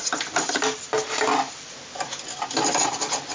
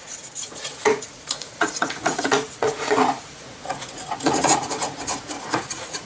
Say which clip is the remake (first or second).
second